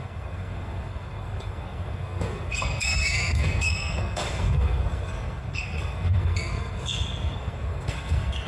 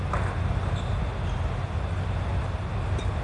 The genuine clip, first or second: second